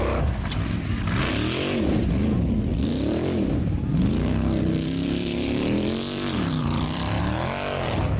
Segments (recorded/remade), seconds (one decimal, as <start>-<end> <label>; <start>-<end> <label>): 0.0-2.7 recorded; 2.7-7.2 remade; 7.2-8.2 recorded